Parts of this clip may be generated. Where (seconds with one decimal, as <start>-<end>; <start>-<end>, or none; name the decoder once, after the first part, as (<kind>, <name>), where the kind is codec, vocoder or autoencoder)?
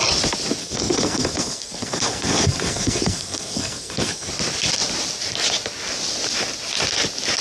0.6-4.3 (codec, SNAC)